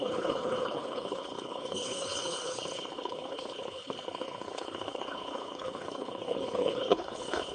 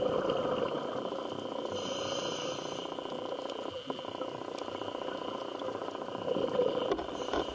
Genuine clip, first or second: second